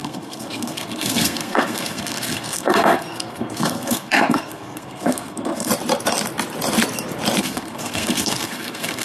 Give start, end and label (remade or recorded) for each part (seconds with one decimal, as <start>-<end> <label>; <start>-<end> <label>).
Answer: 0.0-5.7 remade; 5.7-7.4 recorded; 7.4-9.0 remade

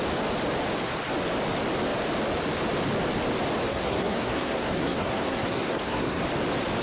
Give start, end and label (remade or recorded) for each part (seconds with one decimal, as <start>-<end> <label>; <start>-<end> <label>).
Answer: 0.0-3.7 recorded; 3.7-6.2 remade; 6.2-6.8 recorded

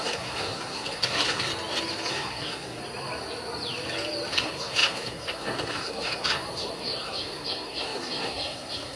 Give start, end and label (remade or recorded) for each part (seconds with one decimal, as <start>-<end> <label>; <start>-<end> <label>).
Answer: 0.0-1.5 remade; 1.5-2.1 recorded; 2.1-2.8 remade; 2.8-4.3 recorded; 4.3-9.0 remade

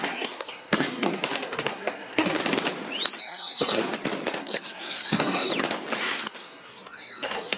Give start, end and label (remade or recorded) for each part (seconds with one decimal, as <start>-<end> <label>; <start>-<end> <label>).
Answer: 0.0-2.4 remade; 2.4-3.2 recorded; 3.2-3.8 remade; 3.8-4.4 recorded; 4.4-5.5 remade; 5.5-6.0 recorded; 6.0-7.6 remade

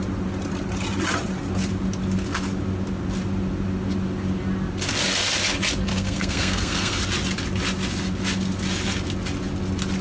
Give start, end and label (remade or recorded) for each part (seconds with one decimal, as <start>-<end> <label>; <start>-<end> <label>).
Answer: 0.0-5.9 recorded; 5.9-7.0 remade; 7.0-10.0 recorded

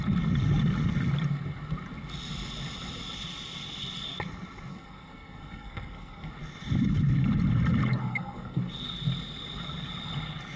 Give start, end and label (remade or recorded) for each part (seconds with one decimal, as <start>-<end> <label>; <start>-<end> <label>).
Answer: 0.0-4.7 recorded; 4.7-6.3 remade; 6.3-8.0 recorded; 8.0-8.6 remade; 8.6-10.6 recorded

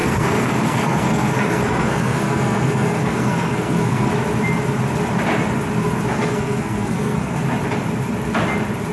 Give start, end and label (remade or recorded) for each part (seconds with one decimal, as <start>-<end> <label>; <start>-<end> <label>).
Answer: 0.0-4.1 remade; 4.1-6.1 recorded; 6.1-7.4 remade; 7.4-8.9 recorded

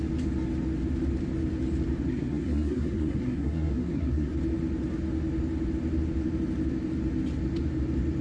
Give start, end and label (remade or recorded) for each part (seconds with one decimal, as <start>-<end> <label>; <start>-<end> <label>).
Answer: 0.0-2.1 recorded; 2.1-4.3 remade; 4.3-8.2 recorded